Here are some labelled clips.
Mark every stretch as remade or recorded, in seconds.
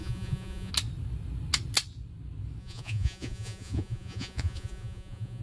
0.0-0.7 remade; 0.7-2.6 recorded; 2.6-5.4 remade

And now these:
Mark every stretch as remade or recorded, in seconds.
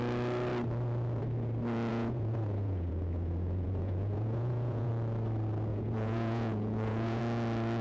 0.0-1.9 recorded; 1.9-4.9 remade; 4.9-5.7 recorded; 5.7-7.2 remade; 7.2-7.8 recorded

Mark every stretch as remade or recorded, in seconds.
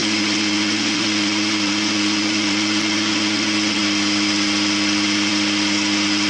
0.0-3.8 remade; 3.8-6.3 recorded